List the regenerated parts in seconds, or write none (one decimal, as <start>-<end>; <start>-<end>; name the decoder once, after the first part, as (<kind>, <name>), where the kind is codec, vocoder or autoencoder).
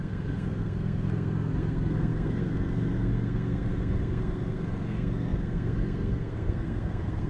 0.0-7.3 (codec, SNAC)